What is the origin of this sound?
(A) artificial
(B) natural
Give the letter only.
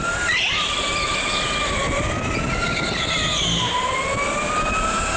B